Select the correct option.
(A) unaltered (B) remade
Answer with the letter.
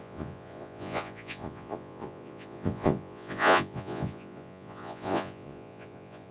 B